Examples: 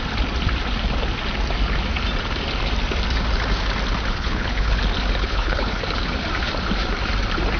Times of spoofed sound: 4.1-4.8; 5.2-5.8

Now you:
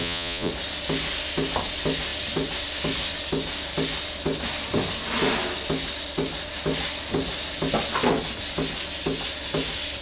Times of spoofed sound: 0.0-0.5

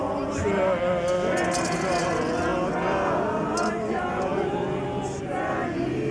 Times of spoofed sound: none

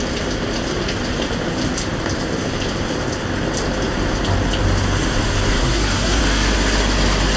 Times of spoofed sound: 5.6-6.2

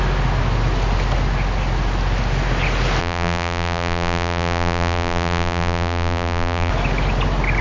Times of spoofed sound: 3.0-6.7

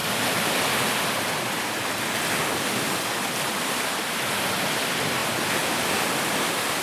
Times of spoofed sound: 3.5-6.8